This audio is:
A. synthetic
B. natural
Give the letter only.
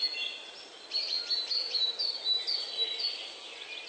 B